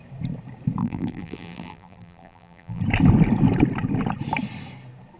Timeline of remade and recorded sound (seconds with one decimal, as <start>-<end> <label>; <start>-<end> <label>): 0.0-0.8 recorded; 0.8-2.8 remade; 2.8-5.2 recorded